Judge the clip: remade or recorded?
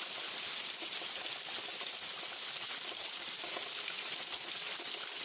recorded